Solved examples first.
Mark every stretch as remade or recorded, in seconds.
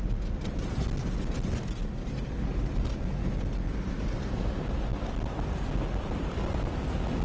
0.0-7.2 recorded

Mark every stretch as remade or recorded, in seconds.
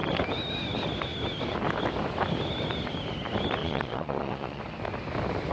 0.0-3.6 recorded; 3.6-4.6 remade; 4.6-5.5 recorded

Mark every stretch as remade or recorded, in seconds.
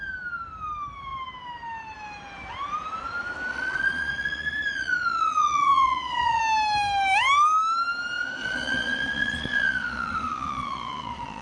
0.0-3.5 recorded; 3.5-6.4 remade; 6.4-8.4 recorded; 8.4-11.4 remade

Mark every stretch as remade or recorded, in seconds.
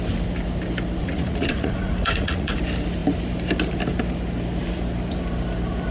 0.0-1.0 recorded; 1.0-2.6 remade; 2.6-5.9 recorded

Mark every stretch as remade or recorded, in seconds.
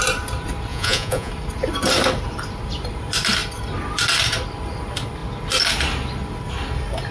0.0-0.7 recorded; 0.7-1.3 remade; 1.3-7.1 recorded